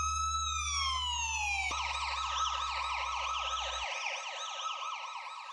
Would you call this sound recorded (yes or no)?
yes